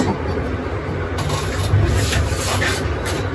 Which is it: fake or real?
real